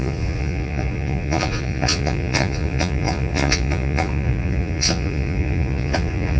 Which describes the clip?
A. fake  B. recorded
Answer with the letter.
A